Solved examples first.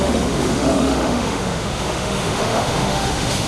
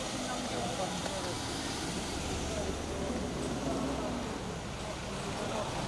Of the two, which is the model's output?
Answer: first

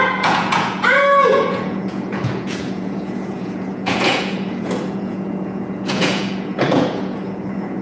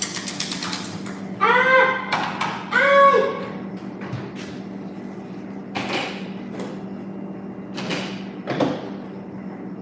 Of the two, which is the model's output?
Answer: first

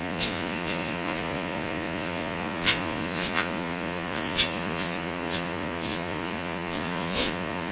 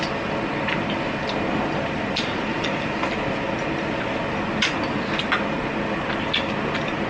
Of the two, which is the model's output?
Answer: first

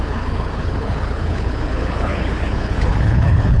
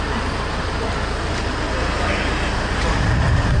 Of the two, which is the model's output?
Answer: first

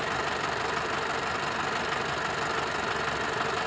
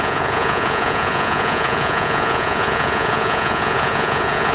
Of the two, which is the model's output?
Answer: second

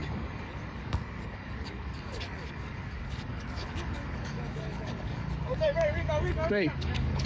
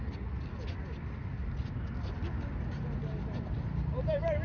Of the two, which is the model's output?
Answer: first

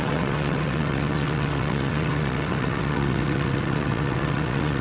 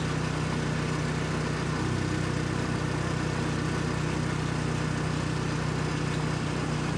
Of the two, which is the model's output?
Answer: first